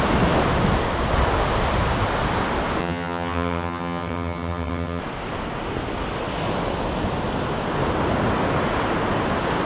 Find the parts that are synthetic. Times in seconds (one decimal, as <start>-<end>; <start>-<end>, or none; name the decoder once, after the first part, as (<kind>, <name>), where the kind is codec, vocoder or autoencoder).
2.8-5.0 (vocoder, HiFi-GAN)

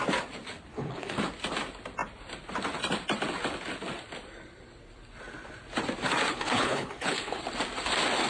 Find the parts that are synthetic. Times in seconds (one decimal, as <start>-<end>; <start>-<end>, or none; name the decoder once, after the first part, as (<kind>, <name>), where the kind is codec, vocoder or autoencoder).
0.7-1.2 (codec, HILCodec); 6.3-7.4